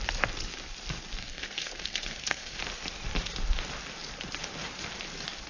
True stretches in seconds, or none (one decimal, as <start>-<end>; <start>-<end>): 0.0-1.2; 2.6-5.5